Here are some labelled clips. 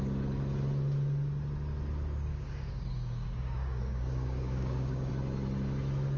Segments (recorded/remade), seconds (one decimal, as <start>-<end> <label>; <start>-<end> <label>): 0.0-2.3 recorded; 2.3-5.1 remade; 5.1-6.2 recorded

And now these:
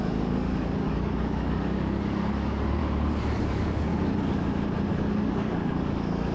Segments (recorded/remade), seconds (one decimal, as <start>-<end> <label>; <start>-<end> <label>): 0.0-2.8 remade; 2.8-3.4 recorded; 3.4-3.9 remade; 3.9-4.9 recorded; 4.9-6.3 remade

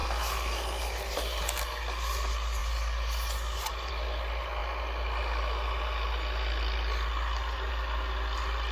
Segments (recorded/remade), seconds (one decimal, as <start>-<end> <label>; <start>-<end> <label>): 0.0-8.7 recorded

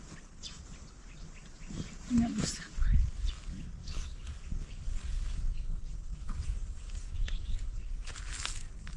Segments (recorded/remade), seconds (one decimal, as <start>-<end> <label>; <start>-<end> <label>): 0.0-3.8 recorded; 3.8-8.1 remade; 8.1-9.0 recorded

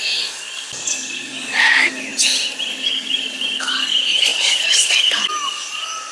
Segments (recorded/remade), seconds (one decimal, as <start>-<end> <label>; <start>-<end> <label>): 0.0-2.1 remade; 2.1-2.7 recorded; 2.7-6.1 remade